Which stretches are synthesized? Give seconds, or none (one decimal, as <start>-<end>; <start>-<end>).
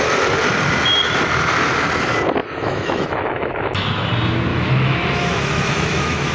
2.4-4.1; 4.5-6.3